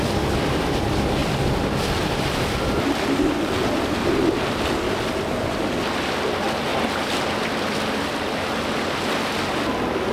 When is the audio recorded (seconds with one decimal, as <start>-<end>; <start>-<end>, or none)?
0.0-10.1